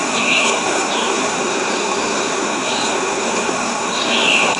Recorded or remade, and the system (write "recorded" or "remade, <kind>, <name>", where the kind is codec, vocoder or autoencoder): remade, codec, SNAC